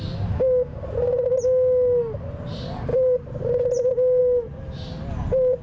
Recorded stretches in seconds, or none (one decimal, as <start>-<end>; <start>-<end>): 0.0-2.9; 3.4-4.2; 5.0-5.6